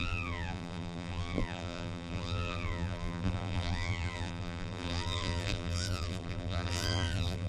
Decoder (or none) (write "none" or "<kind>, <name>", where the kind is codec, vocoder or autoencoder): vocoder, BigVGAN v2